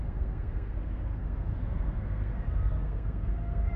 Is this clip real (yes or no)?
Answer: no